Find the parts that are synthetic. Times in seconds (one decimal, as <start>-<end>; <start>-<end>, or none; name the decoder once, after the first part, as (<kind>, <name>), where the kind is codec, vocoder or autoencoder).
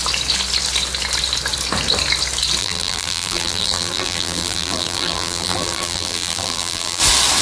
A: 2.6-7.0 (vocoder, BigVGAN v2)